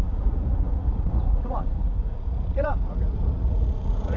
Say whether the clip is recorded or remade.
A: remade